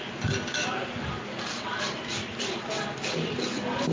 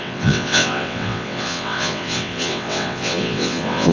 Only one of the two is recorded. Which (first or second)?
first